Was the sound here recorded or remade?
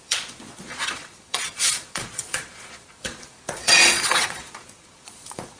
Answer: remade